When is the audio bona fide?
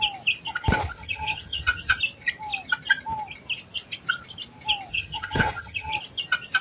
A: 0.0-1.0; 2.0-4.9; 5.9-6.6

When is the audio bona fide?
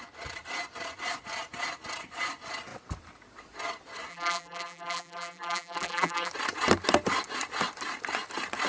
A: 0.0-4.1; 6.3-8.7